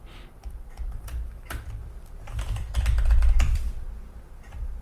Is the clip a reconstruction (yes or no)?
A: yes